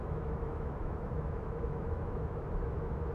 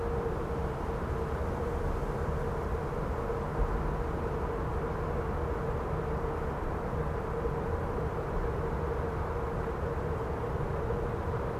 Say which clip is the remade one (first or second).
first